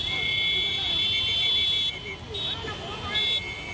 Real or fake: real